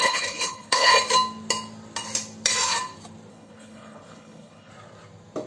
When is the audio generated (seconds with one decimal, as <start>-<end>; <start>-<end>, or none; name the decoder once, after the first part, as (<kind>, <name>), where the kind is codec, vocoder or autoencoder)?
0.0-0.9 (codec, HILCodec); 3.3-4.7